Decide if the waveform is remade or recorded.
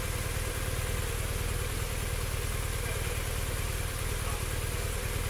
recorded